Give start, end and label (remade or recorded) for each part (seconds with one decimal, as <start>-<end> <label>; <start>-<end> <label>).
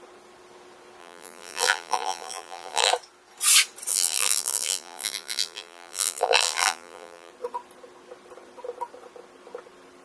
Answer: 0.0-1.0 recorded; 1.0-2.9 remade; 2.9-3.9 recorded; 3.9-7.3 remade; 7.3-10.0 recorded